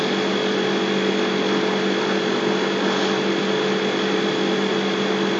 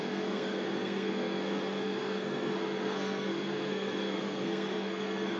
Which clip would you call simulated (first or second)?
second